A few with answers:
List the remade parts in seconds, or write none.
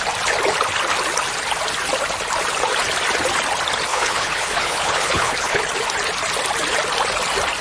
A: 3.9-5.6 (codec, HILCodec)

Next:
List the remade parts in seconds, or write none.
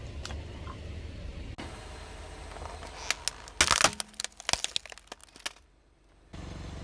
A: none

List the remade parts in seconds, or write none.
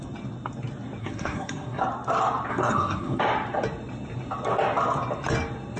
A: 1.0-1.8 (codec, SNAC); 2.5-3.2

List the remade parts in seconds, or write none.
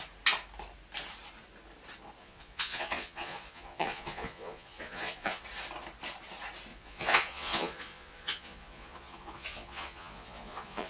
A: 2.2-5.4 (vocoder, Vocos); 6.7-10.9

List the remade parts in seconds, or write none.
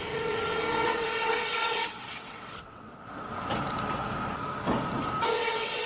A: 0.0-2.9 (vocoder, WaveNeXt); 5.2-5.9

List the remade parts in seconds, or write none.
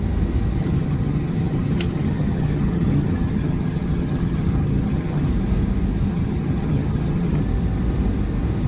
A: 0.6-5.3 (vocoder, HiFi-GAN); 6.1-7.4